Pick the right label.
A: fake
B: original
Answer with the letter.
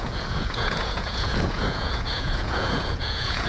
A